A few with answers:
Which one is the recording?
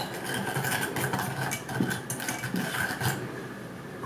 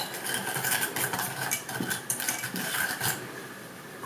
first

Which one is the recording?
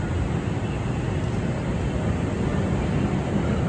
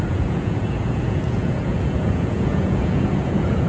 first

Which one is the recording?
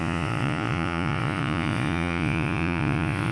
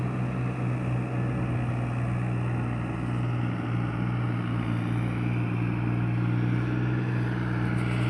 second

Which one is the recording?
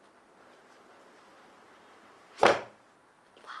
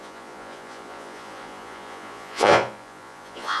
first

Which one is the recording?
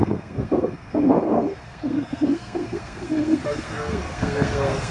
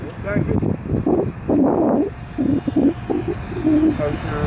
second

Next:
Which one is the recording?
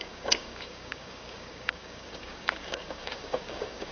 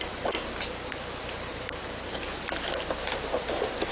second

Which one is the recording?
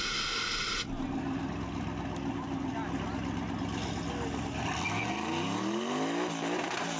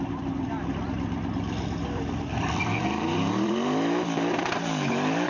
first